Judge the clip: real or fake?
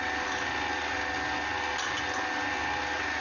real